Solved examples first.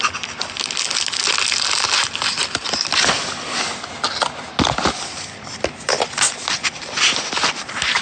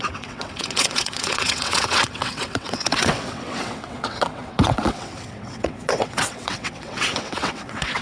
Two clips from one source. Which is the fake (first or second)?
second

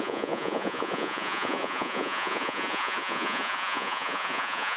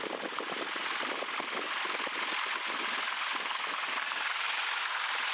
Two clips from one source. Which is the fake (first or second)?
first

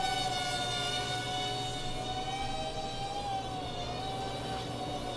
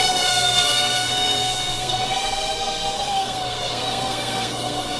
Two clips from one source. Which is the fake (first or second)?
second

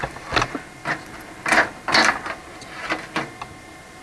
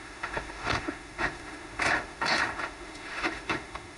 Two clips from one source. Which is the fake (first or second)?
second